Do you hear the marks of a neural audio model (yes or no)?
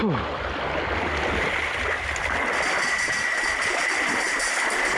no